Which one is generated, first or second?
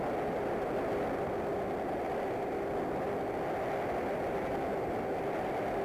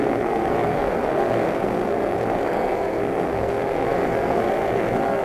second